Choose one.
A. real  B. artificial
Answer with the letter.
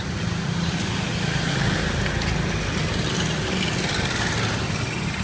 A